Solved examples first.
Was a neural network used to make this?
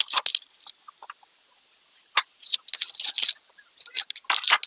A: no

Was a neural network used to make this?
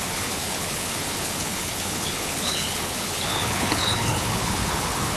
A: yes